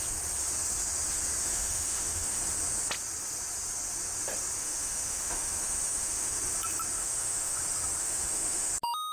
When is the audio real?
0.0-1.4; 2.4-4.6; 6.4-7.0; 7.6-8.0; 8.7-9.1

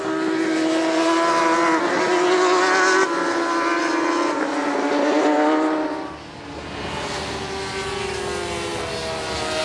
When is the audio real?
0.0-9.6